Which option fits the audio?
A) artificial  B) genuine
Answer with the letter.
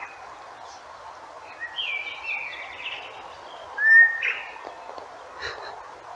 B